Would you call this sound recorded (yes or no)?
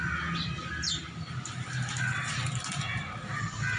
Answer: yes